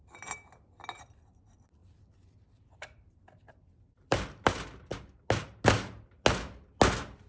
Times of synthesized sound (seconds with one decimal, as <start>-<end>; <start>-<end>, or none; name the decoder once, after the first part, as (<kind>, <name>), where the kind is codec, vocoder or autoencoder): 1.8-4.5 (vocoder, BigVGAN v2)